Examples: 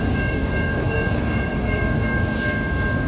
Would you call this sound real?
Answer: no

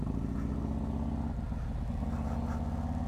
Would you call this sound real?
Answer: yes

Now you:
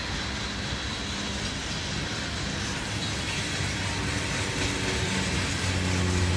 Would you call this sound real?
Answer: yes